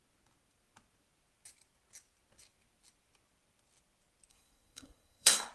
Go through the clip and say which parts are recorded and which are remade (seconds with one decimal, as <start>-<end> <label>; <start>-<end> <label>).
0.0-4.3 recorded; 4.3-5.5 remade